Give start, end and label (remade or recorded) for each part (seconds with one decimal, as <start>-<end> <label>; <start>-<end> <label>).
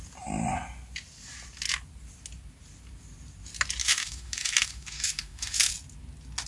0.0-3.8 recorded; 3.8-5.7 remade; 5.7-6.5 recorded